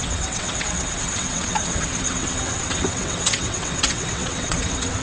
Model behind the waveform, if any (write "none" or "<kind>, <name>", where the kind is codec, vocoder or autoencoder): vocoder, WaveNeXt